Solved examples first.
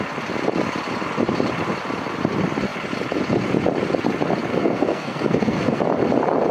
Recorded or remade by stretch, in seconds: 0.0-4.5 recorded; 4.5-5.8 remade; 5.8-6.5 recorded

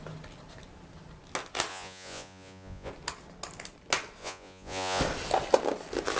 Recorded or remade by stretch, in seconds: 0.0-1.7 recorded; 1.7-2.9 remade; 2.9-4.2 recorded; 4.2-5.0 remade; 5.0-6.2 recorded

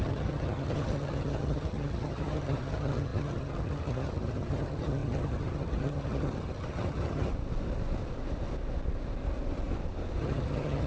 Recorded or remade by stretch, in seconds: 0.0-7.3 remade; 7.3-10.2 recorded; 10.2-10.9 remade